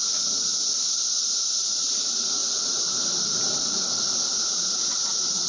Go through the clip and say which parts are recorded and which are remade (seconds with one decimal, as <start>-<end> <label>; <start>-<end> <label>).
0.0-0.5 remade; 0.5-1.5 recorded; 1.5-2.4 remade; 2.4-4.5 recorded; 4.5-5.5 remade